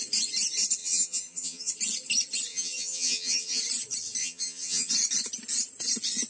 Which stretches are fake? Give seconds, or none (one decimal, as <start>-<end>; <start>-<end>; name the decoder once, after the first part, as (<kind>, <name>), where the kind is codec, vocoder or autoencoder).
0.8-1.7 (vocoder, HiFi-GAN); 2.5-3.6; 4.2-4.9